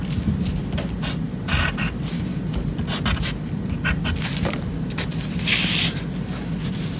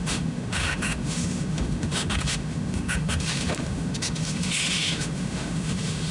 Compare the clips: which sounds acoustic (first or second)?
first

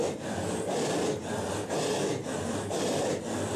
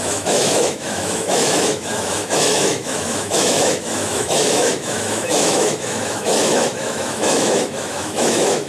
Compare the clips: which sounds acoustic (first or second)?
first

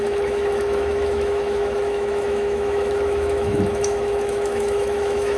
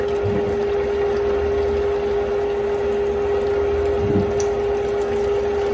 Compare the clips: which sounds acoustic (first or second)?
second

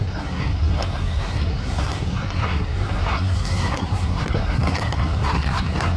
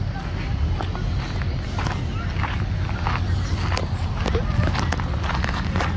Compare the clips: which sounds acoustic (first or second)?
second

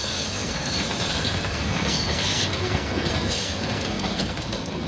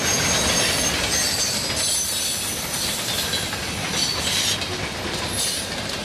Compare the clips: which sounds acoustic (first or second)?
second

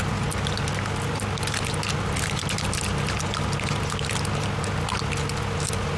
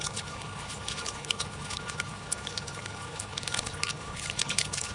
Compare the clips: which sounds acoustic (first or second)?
first